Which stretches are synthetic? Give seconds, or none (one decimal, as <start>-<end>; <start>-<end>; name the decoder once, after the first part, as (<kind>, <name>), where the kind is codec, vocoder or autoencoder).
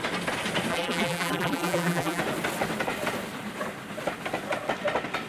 0.7-2.2 (vocoder, BigVGAN v2)